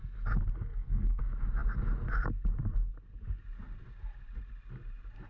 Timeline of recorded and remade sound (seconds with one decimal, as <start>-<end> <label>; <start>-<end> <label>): 0.0-0.7 recorded; 0.7-1.2 remade; 1.2-5.3 recorded